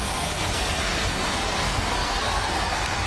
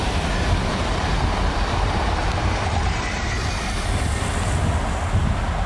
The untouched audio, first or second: second